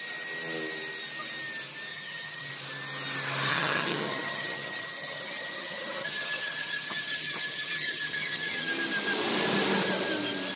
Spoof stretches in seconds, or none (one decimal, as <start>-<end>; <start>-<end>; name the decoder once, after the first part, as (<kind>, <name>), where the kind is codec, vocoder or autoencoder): 1.9-2.5 (vocoder, HiFi-GAN); 3.5-8.7